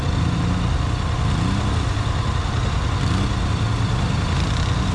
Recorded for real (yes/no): yes